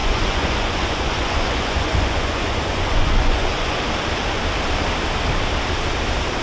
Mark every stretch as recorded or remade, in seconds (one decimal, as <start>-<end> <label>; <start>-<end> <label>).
0.0-3.8 remade; 3.8-6.4 recorded